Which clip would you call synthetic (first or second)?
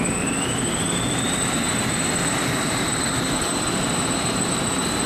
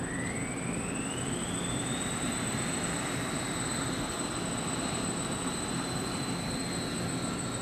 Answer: first